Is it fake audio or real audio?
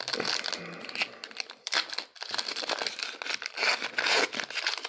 real